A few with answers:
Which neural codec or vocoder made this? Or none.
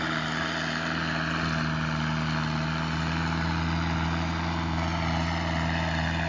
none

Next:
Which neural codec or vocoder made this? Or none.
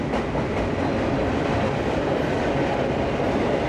vocoder, BigVGAN v2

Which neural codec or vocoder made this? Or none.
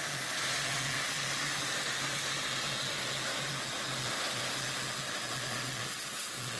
none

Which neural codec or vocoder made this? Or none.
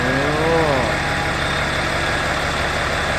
none